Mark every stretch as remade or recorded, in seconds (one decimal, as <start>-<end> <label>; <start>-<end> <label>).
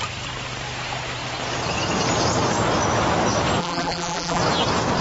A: 0.0-3.6 recorded; 3.6-4.4 remade; 4.4-5.0 recorded